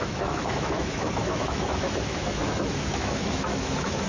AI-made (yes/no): yes